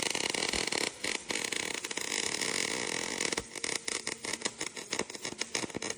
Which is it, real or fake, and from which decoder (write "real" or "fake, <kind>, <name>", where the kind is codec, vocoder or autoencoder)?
real